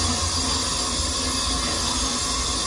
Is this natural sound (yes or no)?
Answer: yes